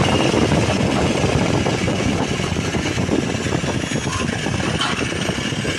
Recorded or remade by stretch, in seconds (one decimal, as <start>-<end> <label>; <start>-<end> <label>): 0.0-0.7 recorded; 0.7-1.2 remade; 1.2-1.7 recorded; 1.7-3.1 remade; 3.1-5.8 recorded

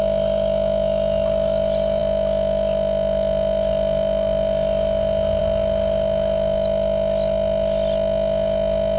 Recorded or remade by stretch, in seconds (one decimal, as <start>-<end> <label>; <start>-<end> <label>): 0.0-9.0 recorded

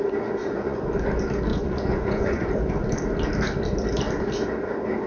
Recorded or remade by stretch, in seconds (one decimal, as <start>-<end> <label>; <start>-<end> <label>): 0.0-0.4 recorded; 0.4-0.9 remade; 0.9-1.5 recorded; 1.5-2.5 remade; 2.5-5.1 recorded

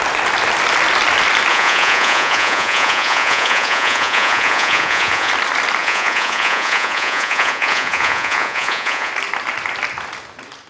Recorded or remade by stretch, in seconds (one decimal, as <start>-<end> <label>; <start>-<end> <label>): 0.0-1.5 recorded; 1.5-5.3 remade; 5.3-5.8 recorded; 5.8-9.1 remade; 9.1-10.7 recorded

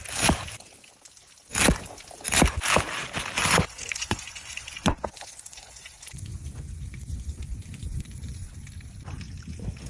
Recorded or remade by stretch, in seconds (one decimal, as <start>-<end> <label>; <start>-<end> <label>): 0.0-3.4 recorded; 3.4-8.5 remade; 8.5-9.9 recorded

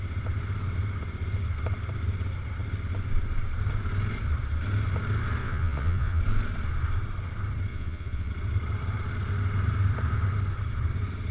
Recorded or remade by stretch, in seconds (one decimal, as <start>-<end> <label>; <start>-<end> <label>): 0.0-5.4 recorded; 5.4-6.2 remade; 6.2-7.7 recorded; 7.7-8.3 remade; 8.3-11.3 recorded

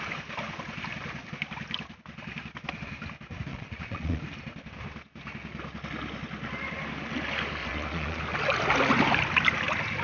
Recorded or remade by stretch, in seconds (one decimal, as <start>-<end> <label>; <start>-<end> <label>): 0.0-3.5 recorded; 3.5-4.2 remade; 4.2-7.6 recorded; 7.6-8.2 remade; 8.2-10.0 recorded

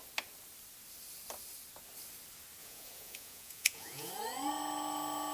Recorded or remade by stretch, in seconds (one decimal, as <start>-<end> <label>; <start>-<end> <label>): 0.0-2.6 recorded; 2.6-4.1 remade; 4.1-5.3 recorded